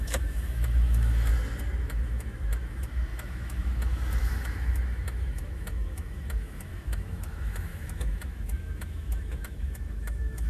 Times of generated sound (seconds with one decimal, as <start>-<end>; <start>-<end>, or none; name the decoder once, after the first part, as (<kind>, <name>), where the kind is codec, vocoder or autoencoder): 0.0-1.3 (autoencoder, DAC-VAE); 1.8-10.5